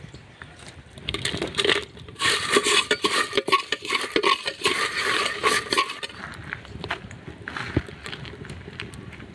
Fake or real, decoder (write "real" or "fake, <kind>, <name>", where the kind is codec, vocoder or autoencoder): fake, vocoder, BigVGAN v2